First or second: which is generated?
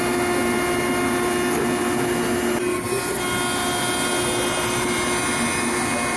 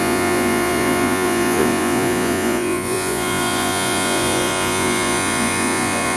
second